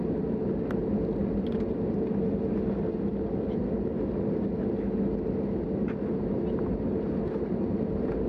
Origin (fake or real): real